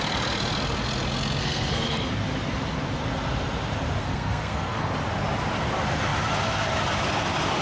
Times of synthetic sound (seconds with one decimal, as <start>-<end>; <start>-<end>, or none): 1.4-2.1; 4.0-4.9

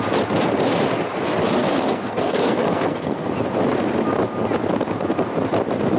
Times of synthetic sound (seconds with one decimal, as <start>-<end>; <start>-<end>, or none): 1.6-3.3

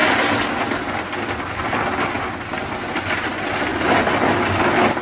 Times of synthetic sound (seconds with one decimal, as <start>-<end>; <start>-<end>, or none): none

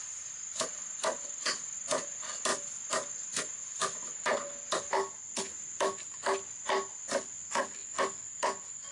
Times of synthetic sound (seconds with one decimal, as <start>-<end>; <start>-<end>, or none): none

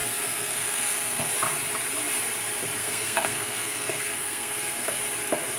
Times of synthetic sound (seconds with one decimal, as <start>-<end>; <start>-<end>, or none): 0.0-1.3; 2.8-5.0